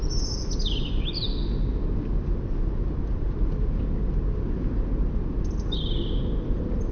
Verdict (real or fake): real